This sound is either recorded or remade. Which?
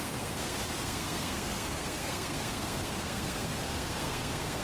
remade